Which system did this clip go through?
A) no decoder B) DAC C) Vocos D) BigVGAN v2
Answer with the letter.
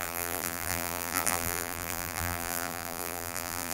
D